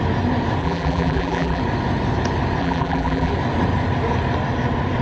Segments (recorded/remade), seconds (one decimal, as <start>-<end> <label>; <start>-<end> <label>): 0.0-0.6 recorded; 0.6-1.6 remade; 1.6-2.6 recorded; 2.6-3.3 remade; 3.3-5.0 recorded

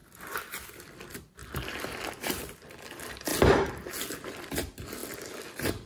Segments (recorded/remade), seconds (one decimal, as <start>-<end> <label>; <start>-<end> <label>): 0.0-0.7 recorded; 0.7-5.0 remade; 5.0-5.9 recorded